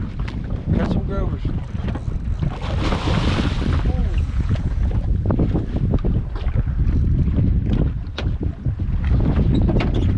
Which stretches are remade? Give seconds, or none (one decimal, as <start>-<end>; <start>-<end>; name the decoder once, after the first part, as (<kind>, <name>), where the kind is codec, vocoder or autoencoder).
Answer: 4.0-4.9 (vocoder, Vocos)